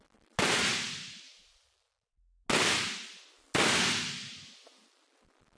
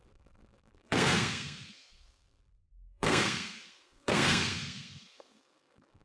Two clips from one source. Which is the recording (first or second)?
first